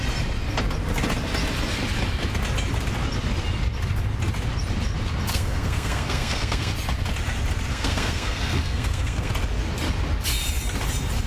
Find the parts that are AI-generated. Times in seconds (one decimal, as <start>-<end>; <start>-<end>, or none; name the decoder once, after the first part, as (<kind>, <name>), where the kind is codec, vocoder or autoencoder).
5.3-6.7 (codec, SNAC); 7.7-9.3